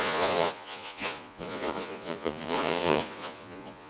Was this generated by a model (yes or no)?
yes